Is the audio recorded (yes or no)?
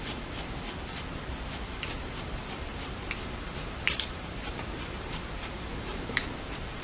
no